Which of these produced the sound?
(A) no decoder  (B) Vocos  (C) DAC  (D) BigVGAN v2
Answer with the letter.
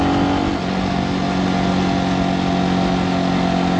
A